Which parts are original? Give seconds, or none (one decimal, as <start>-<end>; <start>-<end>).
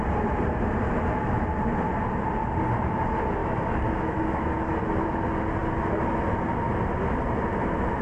0.0-3.4; 4.5-8.0